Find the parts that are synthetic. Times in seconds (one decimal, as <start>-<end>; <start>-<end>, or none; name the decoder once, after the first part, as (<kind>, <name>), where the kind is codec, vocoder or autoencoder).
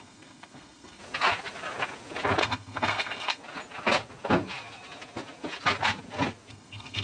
0.0-1.0 (codec, SNAC); 2.4-3.4; 6.5-7.0